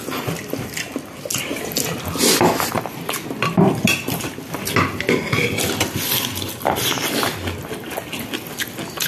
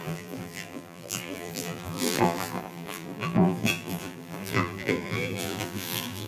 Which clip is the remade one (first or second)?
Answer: second